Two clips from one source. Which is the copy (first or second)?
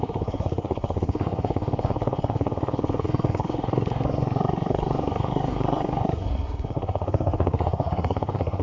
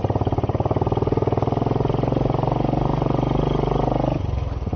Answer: first